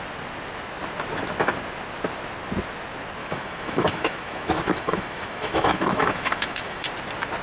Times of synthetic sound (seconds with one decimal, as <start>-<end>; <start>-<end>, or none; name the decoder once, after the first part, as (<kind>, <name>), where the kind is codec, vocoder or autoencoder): 3.2-6.9 (autoencoder, DAC-VAE)